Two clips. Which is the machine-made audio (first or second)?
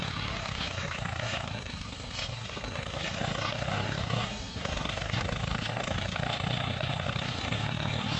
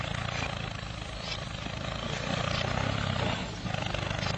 first